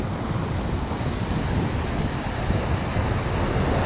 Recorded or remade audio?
recorded